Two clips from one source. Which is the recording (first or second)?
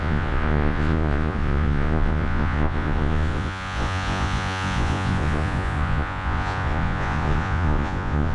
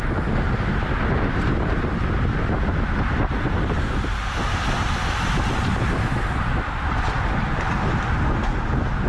second